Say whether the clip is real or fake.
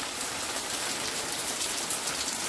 fake